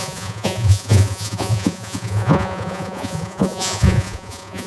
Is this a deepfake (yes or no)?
yes